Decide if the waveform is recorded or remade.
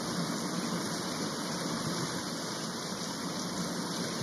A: recorded